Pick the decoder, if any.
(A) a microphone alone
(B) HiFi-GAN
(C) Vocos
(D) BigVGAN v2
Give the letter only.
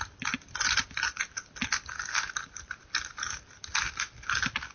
A